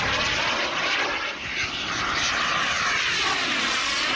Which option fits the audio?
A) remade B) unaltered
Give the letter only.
B